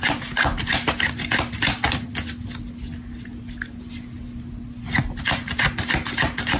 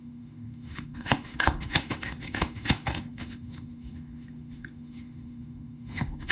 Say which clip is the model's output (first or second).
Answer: second